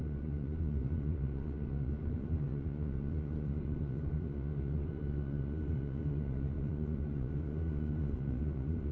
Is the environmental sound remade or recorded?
remade